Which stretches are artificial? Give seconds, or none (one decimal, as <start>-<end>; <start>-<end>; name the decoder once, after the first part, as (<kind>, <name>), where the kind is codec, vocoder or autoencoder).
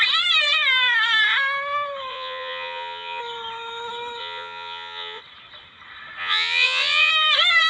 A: 2.1-3.2 (vocoder, Vocos); 4.2-5.2; 6.2-7.1